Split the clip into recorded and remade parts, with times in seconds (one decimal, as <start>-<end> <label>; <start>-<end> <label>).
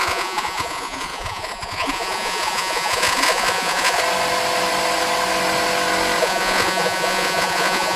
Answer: 0.0-4.0 remade; 4.0-6.2 recorded; 6.2-8.0 remade